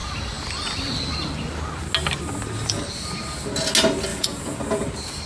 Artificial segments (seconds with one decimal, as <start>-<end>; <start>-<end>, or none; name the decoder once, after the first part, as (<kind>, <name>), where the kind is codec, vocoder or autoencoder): 4.1-4.6 (vocoder, Vocos)